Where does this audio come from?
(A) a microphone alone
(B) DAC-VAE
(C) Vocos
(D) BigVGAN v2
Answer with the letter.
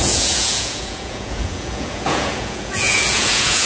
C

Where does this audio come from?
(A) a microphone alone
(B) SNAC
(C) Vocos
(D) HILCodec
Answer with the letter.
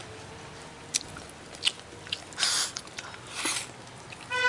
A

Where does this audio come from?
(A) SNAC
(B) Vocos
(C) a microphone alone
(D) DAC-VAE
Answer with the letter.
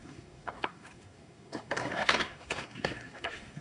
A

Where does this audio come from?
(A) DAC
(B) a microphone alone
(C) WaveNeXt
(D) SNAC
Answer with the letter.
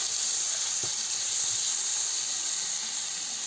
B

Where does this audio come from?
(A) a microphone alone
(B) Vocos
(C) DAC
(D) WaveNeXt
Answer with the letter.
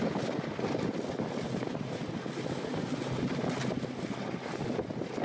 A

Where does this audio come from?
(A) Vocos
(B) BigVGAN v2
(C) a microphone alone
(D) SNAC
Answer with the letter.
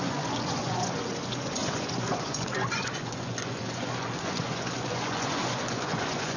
A